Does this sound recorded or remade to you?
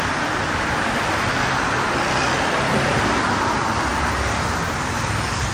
remade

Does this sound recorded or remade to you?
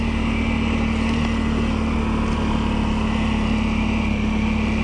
recorded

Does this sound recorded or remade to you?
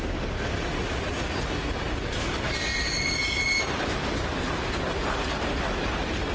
recorded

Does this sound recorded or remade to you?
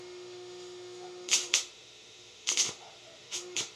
remade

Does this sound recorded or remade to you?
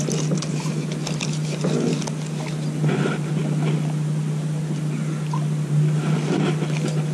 recorded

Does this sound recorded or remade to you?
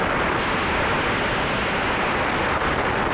recorded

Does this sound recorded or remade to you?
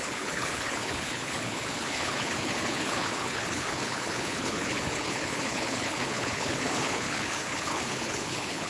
remade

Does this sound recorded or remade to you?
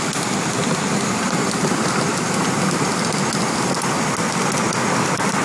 recorded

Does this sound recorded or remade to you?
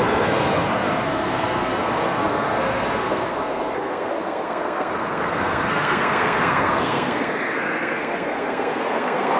remade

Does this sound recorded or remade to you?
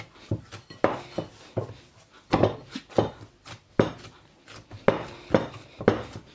recorded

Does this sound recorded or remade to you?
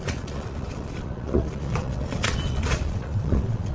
remade